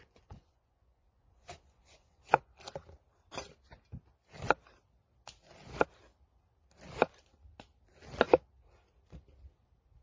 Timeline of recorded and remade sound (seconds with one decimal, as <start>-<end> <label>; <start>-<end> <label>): 0.0-2.5 remade; 2.5-10.0 recorded